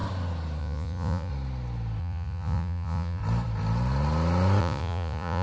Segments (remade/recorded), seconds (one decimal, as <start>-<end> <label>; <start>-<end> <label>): 0.0-0.6 recorded; 0.6-1.3 remade; 1.3-2.0 recorded; 2.0-3.2 remade; 3.2-4.6 recorded; 4.6-5.4 remade

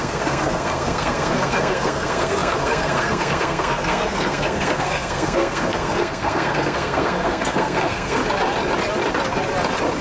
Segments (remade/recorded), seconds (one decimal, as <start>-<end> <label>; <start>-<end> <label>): 0.0-8.2 remade; 8.2-10.0 recorded

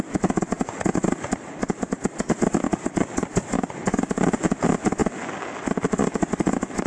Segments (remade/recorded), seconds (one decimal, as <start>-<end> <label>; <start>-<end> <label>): 0.0-6.9 recorded

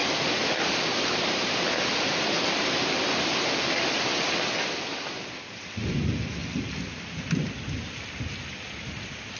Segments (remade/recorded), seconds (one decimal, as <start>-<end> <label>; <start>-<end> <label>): 0.0-9.4 recorded